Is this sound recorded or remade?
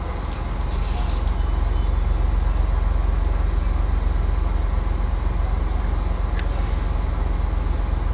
recorded